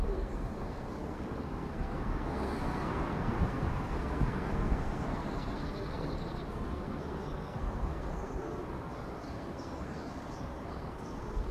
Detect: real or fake fake